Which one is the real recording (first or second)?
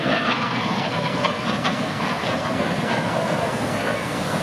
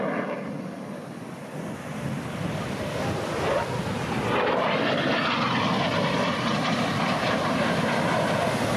second